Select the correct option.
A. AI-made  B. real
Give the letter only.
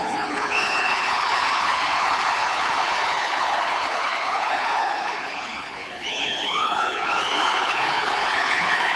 A